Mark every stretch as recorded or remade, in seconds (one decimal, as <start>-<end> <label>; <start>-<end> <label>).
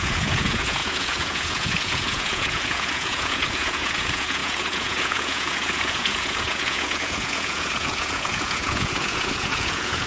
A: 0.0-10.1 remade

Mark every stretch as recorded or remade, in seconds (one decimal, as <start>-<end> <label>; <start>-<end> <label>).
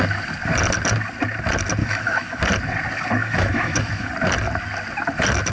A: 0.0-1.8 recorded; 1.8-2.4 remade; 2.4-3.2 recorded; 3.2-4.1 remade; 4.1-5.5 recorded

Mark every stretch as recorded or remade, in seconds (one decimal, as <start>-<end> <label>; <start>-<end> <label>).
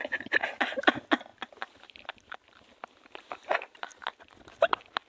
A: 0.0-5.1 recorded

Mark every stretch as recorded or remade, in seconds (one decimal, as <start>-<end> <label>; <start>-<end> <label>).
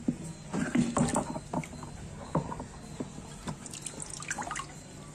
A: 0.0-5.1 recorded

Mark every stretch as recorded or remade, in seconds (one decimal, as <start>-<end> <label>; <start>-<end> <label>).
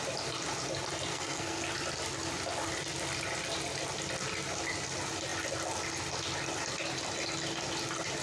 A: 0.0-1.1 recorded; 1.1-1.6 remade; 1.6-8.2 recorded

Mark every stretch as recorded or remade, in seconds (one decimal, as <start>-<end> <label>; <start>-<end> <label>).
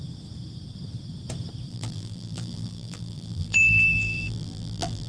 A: 0.0-1.7 recorded; 1.7-5.1 remade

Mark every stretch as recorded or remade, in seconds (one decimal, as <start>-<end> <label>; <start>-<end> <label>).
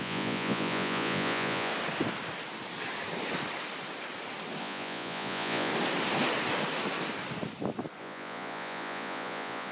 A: 0.0-1.7 remade; 1.7-4.6 recorded; 4.6-5.7 remade; 5.7-8.0 recorded; 8.0-9.7 remade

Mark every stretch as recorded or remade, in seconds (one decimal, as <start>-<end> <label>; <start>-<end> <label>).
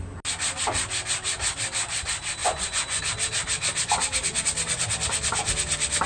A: 0.0-2.4 recorded; 2.4-3.0 remade; 3.0-6.1 recorded